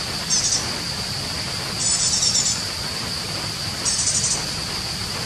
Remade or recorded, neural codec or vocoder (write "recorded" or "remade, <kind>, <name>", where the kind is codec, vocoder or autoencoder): recorded